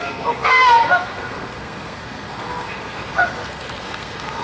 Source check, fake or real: fake